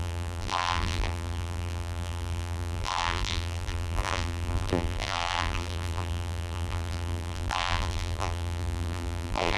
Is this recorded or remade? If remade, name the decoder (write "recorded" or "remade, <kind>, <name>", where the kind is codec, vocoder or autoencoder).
remade, vocoder, BigVGAN v2